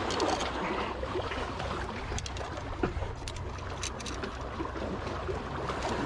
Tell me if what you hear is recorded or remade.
recorded